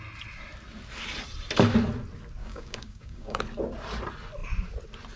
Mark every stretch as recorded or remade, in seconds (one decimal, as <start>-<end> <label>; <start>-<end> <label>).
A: 0.0-2.4 recorded; 2.4-3.4 remade; 3.4-5.2 recorded